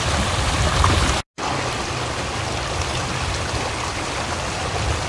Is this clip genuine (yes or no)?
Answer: yes